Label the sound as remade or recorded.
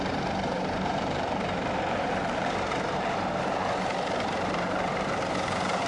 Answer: remade